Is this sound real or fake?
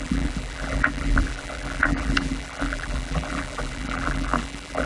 fake